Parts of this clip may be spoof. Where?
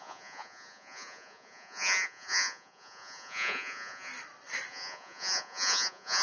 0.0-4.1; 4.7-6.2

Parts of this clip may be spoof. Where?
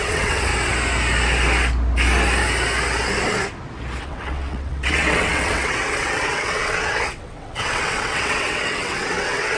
0.0-0.5; 4.0-9.6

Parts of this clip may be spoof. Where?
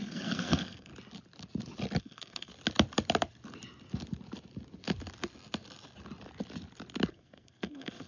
0.0-0.9; 2.0-2.5; 7.1-8.1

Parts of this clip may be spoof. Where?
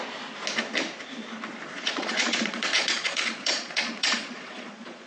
1.7-5.1